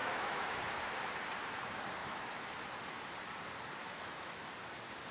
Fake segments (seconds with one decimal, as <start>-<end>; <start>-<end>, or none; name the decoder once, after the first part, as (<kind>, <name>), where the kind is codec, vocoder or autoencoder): 0.0-0.6 (autoencoder, DAC-VAE); 2.0-2.5; 3.8-4.4